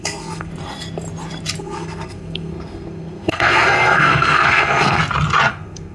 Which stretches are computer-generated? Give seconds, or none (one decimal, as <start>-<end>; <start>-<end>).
0.0-0.5; 1.6-5.0; 5.5-5.9